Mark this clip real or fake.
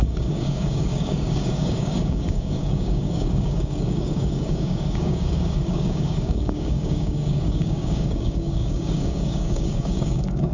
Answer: fake